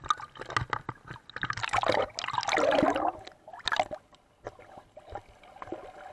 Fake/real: real